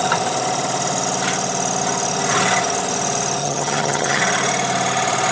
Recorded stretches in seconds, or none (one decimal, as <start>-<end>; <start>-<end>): 0.0-3.4; 4.2-5.3